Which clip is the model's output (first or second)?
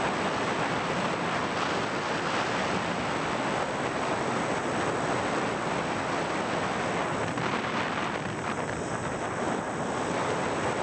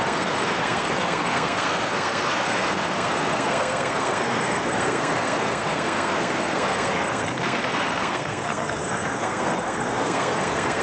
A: second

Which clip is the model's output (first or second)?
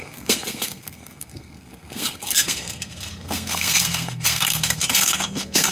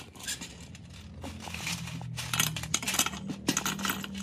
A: first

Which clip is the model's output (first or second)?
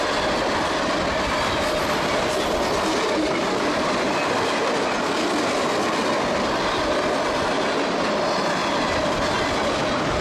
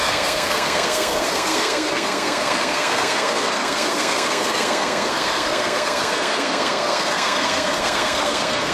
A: second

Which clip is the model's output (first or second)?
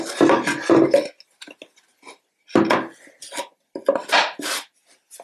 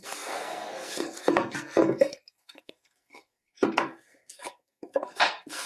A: second